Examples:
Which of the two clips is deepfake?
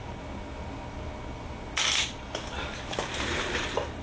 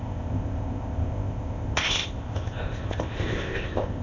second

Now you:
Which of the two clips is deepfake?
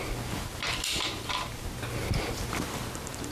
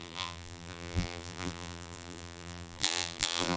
second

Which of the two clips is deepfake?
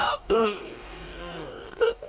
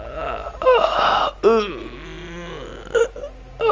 first